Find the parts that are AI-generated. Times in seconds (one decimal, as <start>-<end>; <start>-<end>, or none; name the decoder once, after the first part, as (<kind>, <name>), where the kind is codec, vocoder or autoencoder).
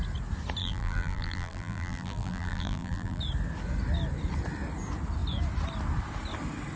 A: 0.6-3.2 (vocoder, BigVGAN v2)